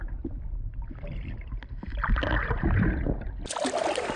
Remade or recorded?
recorded